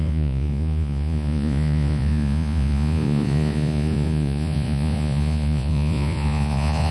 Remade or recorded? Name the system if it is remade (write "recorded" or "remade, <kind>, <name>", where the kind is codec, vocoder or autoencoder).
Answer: remade, vocoder, Vocos